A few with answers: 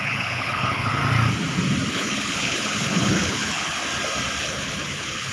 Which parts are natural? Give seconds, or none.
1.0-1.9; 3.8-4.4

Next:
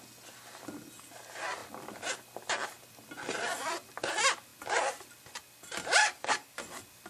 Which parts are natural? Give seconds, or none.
0.0-6.0; 6.6-7.1

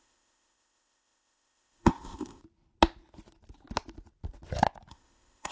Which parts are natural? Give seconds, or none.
2.4-4.9

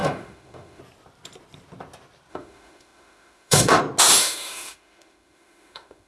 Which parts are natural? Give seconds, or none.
0.8-2.3; 3.8-4.2

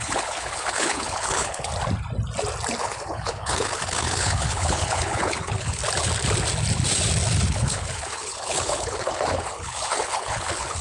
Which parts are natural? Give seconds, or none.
1.7-2.8; 5.8-7.5

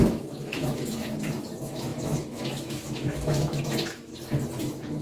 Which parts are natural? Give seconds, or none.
4.1-4.6